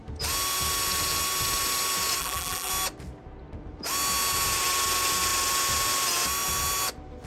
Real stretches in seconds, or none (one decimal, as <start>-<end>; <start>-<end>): 0.0-2.2; 2.7-7.3